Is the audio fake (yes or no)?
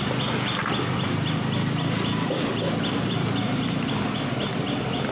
no